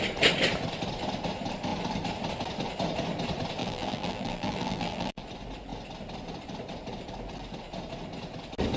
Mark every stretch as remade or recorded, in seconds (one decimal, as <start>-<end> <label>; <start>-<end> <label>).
0.0-3.6 recorded; 3.6-5.2 remade; 5.2-8.8 recorded